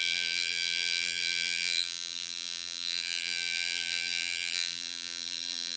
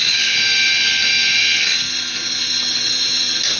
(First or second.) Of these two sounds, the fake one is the first